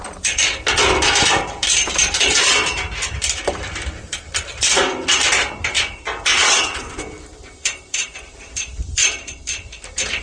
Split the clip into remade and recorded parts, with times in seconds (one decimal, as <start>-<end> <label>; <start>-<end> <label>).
0.0-6.3 recorded; 6.3-7.0 remade; 7.0-10.2 recorded